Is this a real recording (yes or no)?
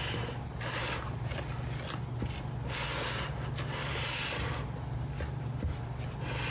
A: yes